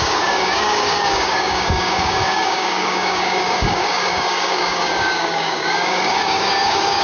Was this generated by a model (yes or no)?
yes